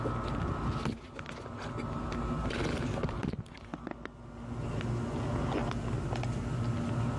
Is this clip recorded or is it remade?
recorded